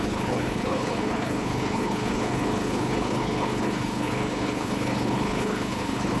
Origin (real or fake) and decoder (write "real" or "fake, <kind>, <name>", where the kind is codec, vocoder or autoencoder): fake, codec, HILCodec